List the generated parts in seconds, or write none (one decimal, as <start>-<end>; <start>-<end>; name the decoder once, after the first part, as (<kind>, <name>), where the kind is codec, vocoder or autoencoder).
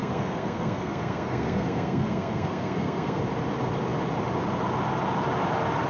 0.0-3.2 (codec, SNAC)